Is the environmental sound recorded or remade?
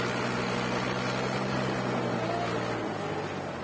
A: recorded